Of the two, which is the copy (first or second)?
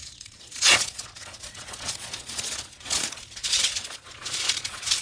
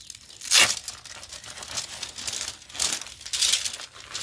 first